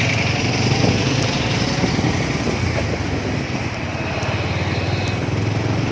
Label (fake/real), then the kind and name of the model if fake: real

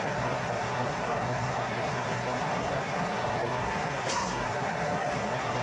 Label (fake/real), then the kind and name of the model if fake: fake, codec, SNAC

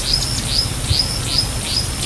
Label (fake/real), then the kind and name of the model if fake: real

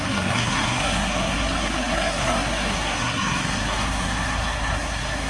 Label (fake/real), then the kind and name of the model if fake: fake, codec, SNAC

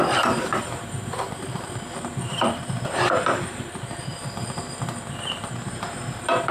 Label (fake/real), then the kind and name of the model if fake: fake, vocoder, BigVGAN v2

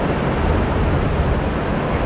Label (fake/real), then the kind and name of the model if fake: real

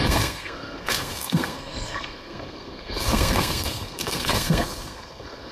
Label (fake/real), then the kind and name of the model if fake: fake, codec, SNAC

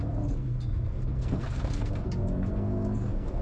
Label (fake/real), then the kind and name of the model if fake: fake, codec, SNAC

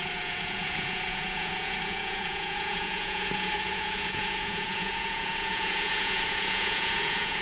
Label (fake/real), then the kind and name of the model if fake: fake, vocoder, Vocos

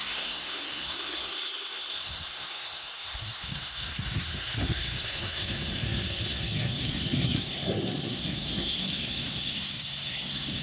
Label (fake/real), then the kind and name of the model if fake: fake, codec, SNAC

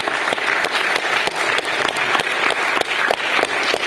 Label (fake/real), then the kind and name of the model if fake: real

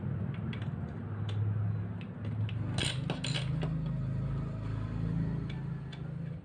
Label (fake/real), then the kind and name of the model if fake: real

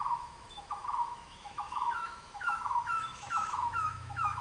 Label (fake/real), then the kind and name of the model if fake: fake, autoencoder, DAC-VAE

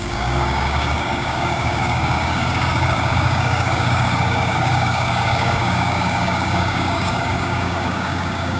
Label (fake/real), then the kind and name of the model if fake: fake, codec, DAC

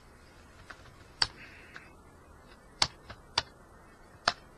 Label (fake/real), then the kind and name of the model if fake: fake, vocoder, BigVGAN v2